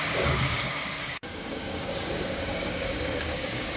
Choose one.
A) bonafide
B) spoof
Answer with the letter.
B